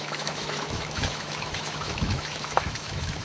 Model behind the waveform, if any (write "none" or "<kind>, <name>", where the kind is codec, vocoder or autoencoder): autoencoder, DAC-VAE